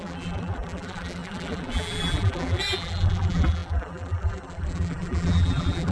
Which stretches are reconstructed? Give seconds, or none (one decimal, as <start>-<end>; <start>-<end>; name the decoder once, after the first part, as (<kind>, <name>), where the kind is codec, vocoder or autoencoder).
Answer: 0.0-5.9 (vocoder, BigVGAN v2)